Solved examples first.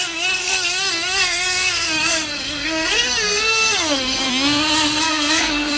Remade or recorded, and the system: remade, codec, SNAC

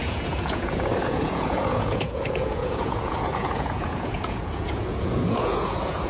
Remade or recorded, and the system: remade, vocoder, Vocos